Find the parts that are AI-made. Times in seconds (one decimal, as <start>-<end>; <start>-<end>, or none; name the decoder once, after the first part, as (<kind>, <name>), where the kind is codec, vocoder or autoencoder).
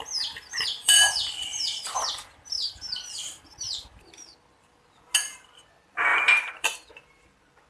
0.8-4.7 (vocoder, BigVGAN v2); 6.1-6.9